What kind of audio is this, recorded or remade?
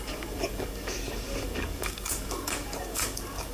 remade